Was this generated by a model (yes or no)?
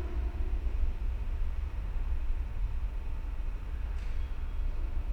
no